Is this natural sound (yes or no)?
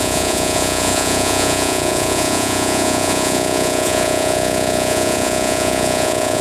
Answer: no